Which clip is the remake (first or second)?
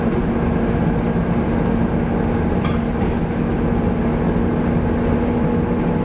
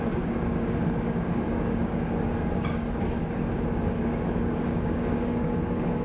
second